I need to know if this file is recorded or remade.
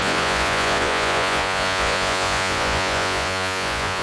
remade